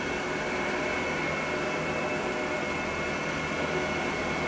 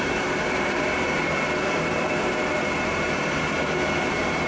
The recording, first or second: first